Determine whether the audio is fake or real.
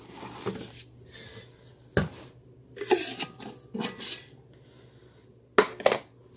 real